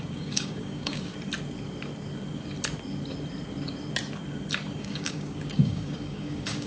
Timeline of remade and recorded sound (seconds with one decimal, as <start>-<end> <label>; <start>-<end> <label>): 0.0-1.1 remade; 1.1-4.8 recorded; 4.8-6.7 remade